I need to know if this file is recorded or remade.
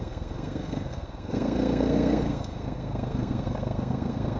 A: remade